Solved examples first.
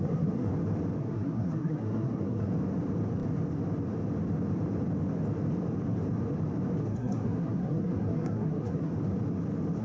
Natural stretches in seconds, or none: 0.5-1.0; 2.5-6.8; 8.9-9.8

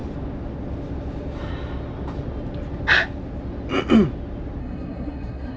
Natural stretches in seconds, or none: 0.0-4.6

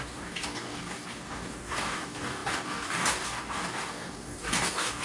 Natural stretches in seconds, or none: none

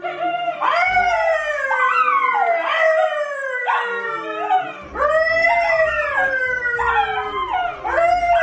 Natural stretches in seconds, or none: 0.0-8.4

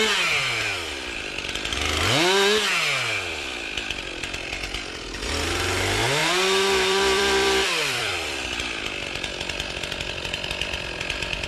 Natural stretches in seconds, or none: 0.0-6.2; 8.1-11.5

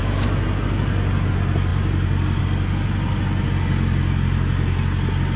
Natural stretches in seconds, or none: 0.0-5.4

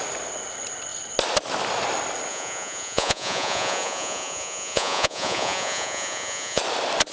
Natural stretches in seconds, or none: 0.0-2.3; 6.6-7.1

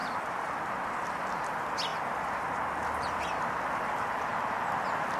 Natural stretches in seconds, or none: 0.6-5.2